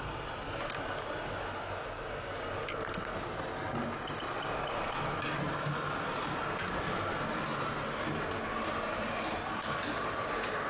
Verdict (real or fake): real